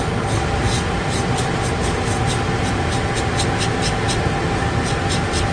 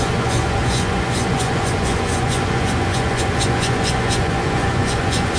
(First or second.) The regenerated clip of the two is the second